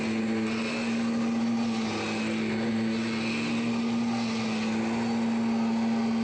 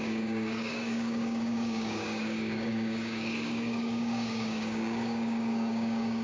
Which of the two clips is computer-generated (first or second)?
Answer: second